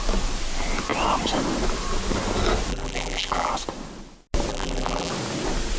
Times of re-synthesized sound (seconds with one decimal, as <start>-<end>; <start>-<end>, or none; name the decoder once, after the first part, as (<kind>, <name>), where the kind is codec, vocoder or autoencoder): 2.7-3.5 (vocoder, BigVGAN v2); 4.5-5.1